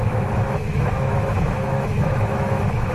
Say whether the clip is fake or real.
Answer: fake